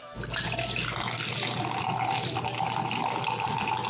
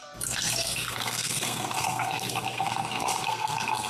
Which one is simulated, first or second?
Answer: second